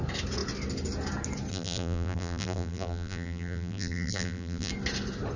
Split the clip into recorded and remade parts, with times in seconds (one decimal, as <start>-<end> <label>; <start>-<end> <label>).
0.0-1.5 recorded; 1.5-4.7 remade; 4.7-5.4 recorded